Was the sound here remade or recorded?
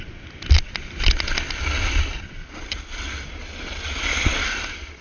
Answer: recorded